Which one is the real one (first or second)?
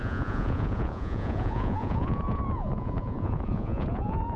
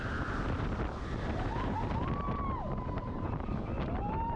second